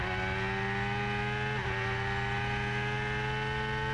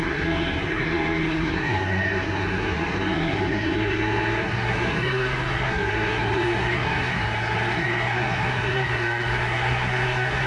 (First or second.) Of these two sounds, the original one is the first